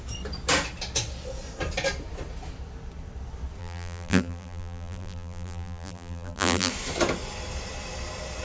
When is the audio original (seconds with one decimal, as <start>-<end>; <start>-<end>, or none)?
0.0-3.6; 6.7-8.4